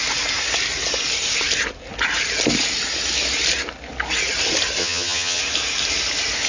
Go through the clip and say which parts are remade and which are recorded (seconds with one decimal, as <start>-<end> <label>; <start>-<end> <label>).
0.0-4.8 recorded; 4.8-5.4 remade; 5.4-6.5 recorded